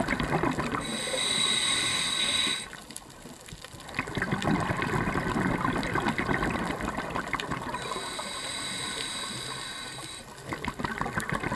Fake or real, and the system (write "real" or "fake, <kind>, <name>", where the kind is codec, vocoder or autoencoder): real